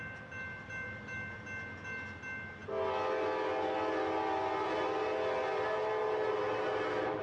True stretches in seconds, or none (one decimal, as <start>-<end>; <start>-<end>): 0.0-6.0